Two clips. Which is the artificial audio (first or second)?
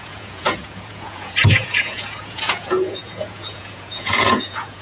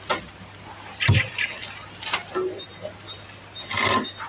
first